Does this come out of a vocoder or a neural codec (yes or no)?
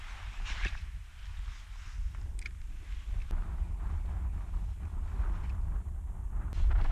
no